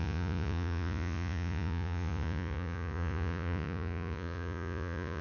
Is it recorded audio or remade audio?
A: remade